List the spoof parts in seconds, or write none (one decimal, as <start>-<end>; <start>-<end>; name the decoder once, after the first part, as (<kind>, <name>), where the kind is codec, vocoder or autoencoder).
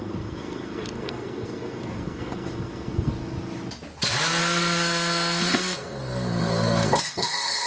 0.0-3.1 (codec, SNAC); 4.4-7.7